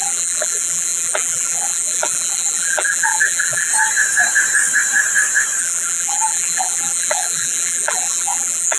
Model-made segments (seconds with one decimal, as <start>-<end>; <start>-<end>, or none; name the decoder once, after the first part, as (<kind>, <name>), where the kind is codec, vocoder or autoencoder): 0.0-3.7 (vocoder, BigVGAN v2); 5.6-8.8

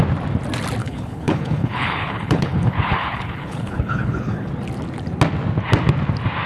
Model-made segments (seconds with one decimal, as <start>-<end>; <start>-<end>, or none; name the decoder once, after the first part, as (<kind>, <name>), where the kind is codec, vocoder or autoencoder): 0.8-4.5 (codec, HILCodec)

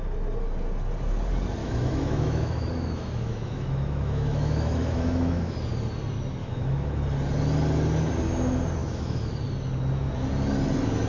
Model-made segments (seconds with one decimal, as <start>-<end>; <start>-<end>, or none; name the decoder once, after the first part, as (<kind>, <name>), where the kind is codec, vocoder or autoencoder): 1.6-5.5 (autoencoder, DAC-VAE); 6.4-7.0; 8.8-9.3

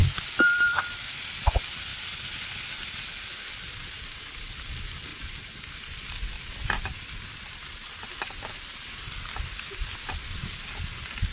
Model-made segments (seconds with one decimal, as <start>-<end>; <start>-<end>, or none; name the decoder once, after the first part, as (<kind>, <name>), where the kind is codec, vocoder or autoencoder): 0.0-1.0 (vocoder, BigVGAN v2); 1.9-2.5; 7.6-10.4

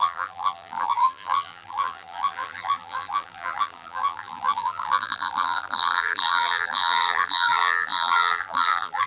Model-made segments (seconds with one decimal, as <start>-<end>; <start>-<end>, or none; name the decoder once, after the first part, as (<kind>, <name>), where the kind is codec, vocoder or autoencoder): 0.0-9.1 (vocoder, BigVGAN v2)

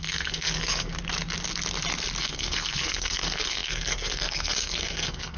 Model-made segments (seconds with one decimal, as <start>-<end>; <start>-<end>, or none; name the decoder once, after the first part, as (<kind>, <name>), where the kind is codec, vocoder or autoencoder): 0.0-0.9 (codec, SNAC); 2.2-5.4

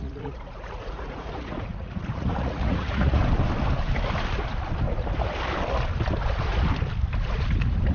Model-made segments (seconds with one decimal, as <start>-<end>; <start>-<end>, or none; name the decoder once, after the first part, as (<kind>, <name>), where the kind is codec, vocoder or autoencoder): 0.0-3.2 (vocoder, Vocos)

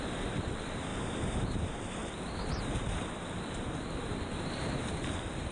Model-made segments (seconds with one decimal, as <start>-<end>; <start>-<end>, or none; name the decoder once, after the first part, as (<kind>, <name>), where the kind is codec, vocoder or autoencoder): 0.0-0.9 (vocoder, BigVGAN v2); 1.5-2.0; 4.4-5.5